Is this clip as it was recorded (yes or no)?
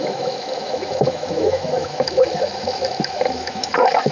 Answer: no